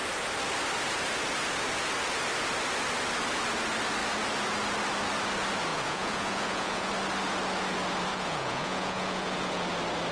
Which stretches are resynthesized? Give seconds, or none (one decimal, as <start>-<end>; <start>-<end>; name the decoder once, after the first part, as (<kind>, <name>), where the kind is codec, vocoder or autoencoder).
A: 5.7-6.9 (vocoder, Vocos); 8.1-9.6